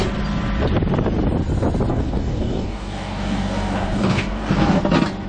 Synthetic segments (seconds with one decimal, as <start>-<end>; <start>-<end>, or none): 1.9-4.8